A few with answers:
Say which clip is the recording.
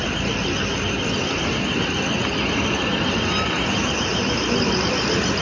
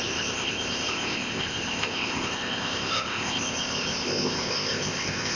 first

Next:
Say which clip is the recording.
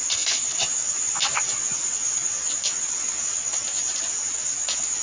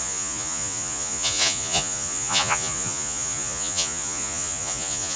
first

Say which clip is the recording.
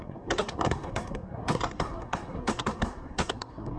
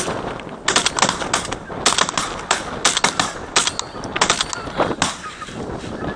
second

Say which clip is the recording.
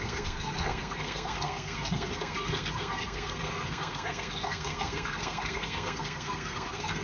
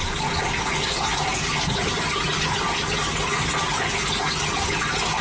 second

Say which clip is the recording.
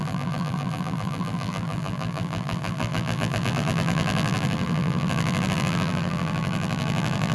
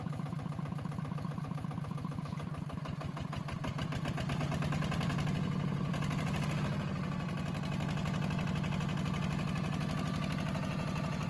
second